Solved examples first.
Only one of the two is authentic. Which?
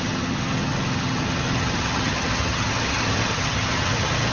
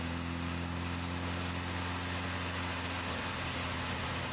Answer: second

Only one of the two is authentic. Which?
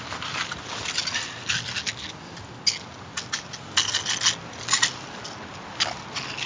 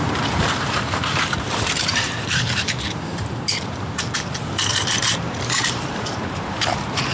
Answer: first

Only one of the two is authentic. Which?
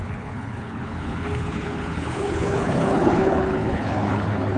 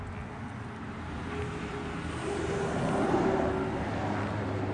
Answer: second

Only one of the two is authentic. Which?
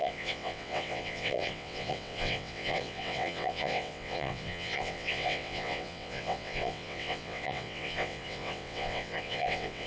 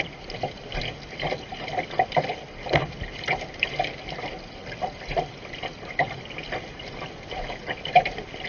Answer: second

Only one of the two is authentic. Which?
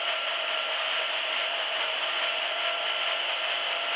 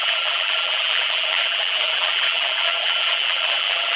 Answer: first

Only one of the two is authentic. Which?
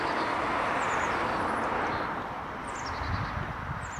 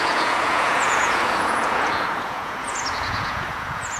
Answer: first